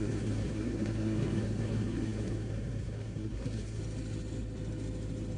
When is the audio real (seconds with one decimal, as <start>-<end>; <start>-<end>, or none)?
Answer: 3.8-5.4